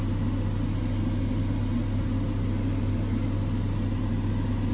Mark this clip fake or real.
real